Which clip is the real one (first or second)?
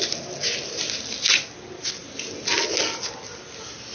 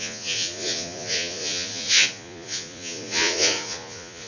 first